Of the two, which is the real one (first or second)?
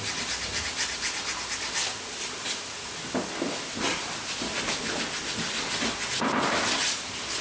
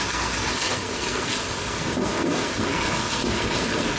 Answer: first